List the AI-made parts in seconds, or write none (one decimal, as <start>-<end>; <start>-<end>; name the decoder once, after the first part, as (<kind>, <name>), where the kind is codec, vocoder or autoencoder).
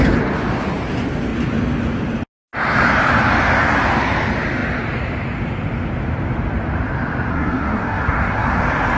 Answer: 7.3-8.6 (codec, SNAC)